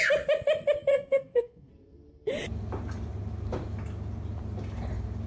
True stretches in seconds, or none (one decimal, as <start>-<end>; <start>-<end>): 0.0-0.9; 1.7-5.3